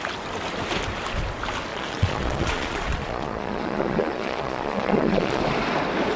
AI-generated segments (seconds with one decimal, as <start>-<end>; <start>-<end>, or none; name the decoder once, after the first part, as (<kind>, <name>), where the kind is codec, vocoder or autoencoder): 1.7-5.4 (vocoder, Vocos)